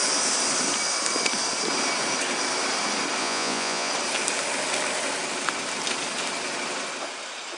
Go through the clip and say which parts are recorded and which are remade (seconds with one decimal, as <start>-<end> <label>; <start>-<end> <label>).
0.0-3.2 recorded; 3.2-3.9 remade; 3.9-7.6 recorded